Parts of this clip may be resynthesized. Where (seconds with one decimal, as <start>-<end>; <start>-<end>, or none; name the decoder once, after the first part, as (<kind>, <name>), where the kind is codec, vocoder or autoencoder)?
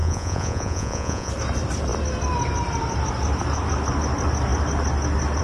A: 0.0-1.3 (vocoder, Vocos)